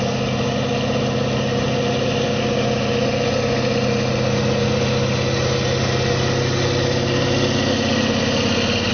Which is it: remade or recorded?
recorded